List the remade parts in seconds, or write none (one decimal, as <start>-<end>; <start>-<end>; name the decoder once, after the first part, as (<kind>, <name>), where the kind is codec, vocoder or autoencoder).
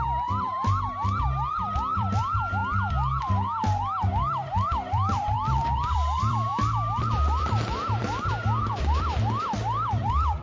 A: 0.0-2.6 (vocoder, BigVGAN v2); 4.1-6.5; 7.0-10.4